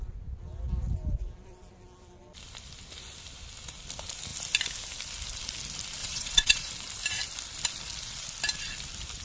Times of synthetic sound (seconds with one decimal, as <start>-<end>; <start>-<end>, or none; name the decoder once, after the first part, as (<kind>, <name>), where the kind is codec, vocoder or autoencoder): 6.0-6.7 (vocoder, WaveNeXt)